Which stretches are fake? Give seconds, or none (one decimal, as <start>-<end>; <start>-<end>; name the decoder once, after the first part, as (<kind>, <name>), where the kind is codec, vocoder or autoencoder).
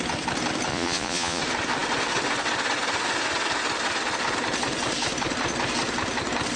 0.7-1.4 (vocoder, Vocos)